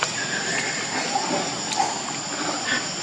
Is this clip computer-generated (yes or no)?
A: no